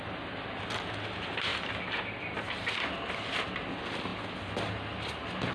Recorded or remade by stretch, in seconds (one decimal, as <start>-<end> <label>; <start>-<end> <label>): 0.0-5.5 recorded